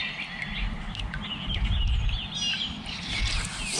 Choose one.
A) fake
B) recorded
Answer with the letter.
B